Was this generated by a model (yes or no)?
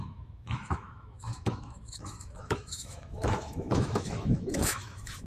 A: yes